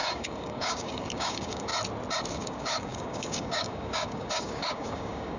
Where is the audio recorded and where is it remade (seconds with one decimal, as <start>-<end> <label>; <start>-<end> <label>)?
0.0-1.7 remade; 1.7-2.3 recorded; 2.3-5.4 remade